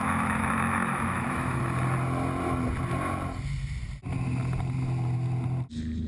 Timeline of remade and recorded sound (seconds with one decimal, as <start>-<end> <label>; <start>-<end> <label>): 0.0-1.6 remade; 1.6-6.1 recorded